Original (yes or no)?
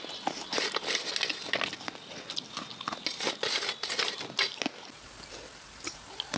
yes